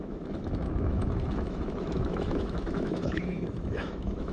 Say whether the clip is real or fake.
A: fake